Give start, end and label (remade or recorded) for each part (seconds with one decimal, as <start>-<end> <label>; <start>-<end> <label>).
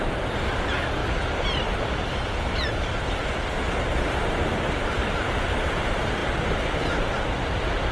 0.0-7.9 recorded